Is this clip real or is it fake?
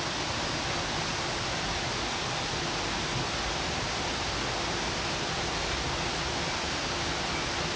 real